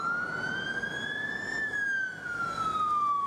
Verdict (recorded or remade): recorded